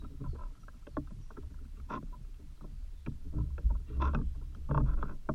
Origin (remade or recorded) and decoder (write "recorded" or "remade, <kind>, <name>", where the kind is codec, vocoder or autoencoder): recorded